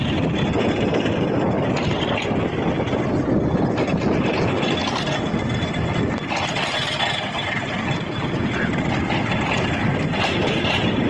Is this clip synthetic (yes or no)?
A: no